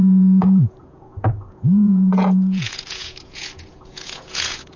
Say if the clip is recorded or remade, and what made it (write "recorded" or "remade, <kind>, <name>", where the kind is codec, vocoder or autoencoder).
remade, vocoder, Vocos